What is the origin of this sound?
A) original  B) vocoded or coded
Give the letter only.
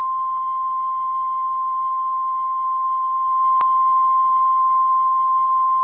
B